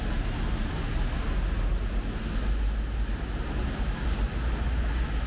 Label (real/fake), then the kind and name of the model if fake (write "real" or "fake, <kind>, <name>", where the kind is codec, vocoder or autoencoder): real